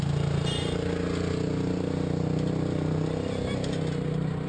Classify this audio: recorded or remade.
recorded